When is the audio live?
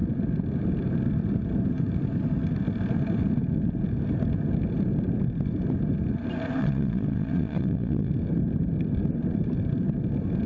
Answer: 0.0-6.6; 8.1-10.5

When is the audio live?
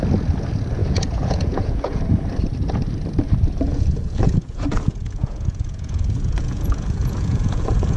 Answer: 0.0-0.8; 2.0-3.7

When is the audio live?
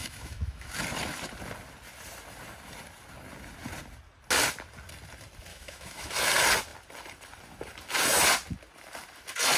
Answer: 0.7-5.5; 6.1-9.6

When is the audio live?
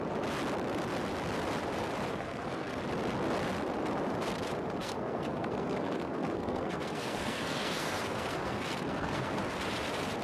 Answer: 0.0-2.1; 2.8-4.8; 9.4-10.2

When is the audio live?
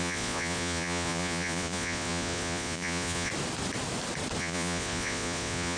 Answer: 3.3-4.4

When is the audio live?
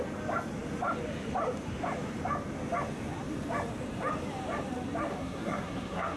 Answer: 0.0-5.1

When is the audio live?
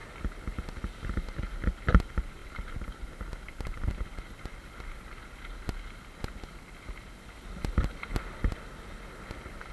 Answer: 0.0-9.7